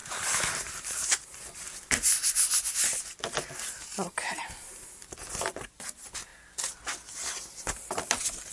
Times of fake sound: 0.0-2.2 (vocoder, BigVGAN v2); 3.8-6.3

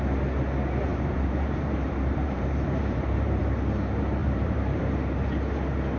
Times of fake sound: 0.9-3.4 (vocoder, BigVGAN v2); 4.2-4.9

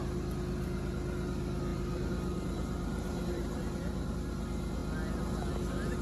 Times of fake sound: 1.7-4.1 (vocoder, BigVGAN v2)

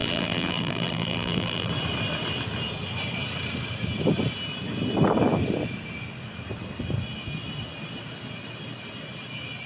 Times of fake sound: 0.0-1.7 (vocoder, BigVGAN v2)

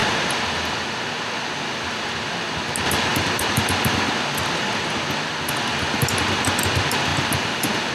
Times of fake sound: 7.1-7.9 (vocoder, BigVGAN v2)

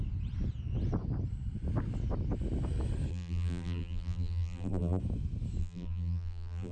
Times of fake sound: 3.1-5.0 (vocoder, BigVGAN v2); 5.6-6.7

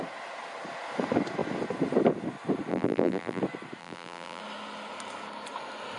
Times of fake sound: 2.7-3.4 (vocoder, BigVGAN v2); 3.8-4.4